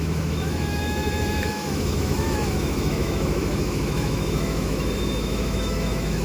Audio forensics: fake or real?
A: fake